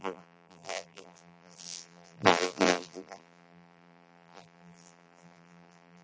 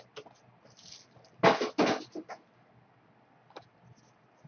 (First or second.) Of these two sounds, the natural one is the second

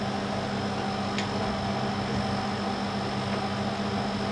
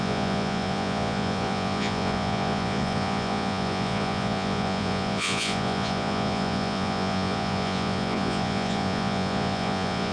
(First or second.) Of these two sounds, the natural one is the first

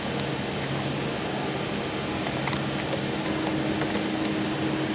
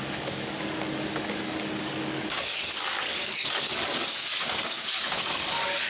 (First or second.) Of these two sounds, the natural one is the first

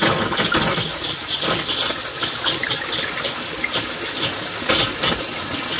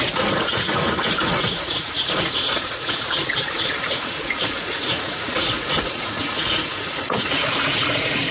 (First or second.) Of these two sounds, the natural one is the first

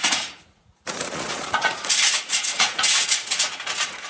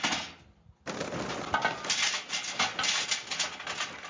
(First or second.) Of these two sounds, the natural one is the second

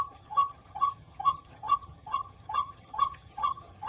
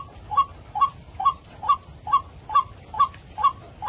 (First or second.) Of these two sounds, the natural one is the second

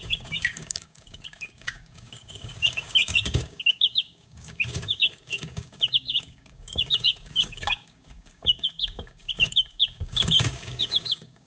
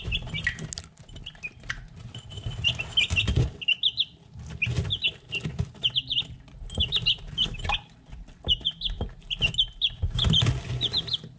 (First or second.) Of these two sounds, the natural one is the second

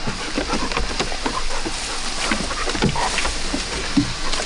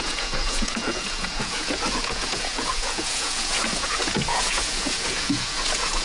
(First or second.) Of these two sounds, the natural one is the first